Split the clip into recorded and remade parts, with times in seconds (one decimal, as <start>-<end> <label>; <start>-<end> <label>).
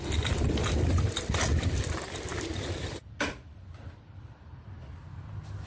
0.0-2.3 recorded; 2.3-4.8 remade; 4.8-5.7 recorded